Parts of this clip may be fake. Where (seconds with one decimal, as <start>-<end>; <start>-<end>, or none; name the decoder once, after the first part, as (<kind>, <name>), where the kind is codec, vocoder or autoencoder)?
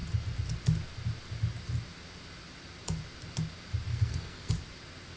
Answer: 3.9-4.5 (codec, SNAC)